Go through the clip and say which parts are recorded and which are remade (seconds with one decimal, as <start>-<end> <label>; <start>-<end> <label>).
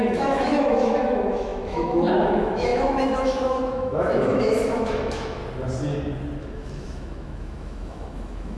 0.0-5.4 remade; 5.4-6.4 recorded; 6.4-8.6 remade